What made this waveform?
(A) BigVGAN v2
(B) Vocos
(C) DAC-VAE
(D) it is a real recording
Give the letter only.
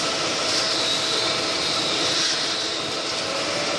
D